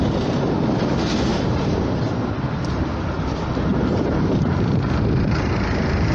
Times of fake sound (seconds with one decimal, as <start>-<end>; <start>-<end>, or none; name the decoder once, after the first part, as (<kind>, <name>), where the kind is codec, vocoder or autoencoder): 1.3-1.8 (vocoder, BigVGAN v2); 3.7-5.5